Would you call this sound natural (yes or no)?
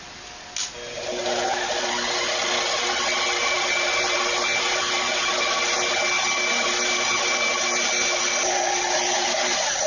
yes